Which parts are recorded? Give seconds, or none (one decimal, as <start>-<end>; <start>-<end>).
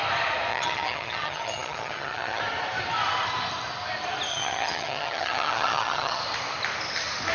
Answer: 0.0-0.5; 2.4-4.3; 6.2-7.3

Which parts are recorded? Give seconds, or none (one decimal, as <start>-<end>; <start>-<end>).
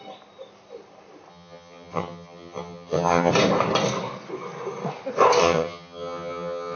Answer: 0.0-1.3; 3.3-5.4